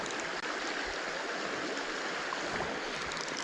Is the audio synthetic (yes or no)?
no